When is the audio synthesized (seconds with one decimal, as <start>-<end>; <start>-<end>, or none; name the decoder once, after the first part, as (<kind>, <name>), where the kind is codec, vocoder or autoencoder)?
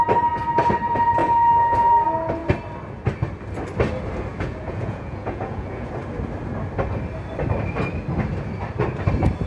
1.2-1.9 (vocoder, Vocos); 4.3-5.9